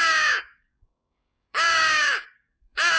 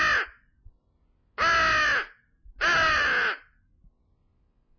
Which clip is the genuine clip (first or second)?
second